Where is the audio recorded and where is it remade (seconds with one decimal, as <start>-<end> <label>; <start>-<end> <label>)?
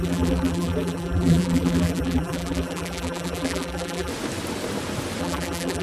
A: 0.0-4.1 remade; 4.1-5.2 recorded; 5.2-5.8 remade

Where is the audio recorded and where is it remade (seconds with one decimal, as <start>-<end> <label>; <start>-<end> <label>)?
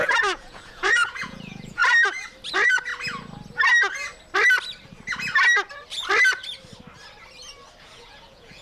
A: 0.0-1.8 remade; 1.8-2.5 recorded; 2.5-2.9 remade; 2.9-7.8 recorded; 7.8-8.6 remade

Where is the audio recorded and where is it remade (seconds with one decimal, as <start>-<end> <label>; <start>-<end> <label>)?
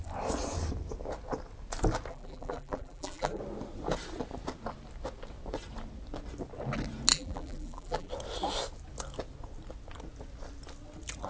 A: 0.0-2.1 recorded; 2.1-3.4 remade; 3.4-7.1 recorded; 7.1-8.1 remade; 8.1-11.3 recorded